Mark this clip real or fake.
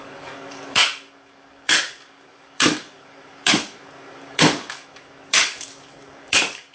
fake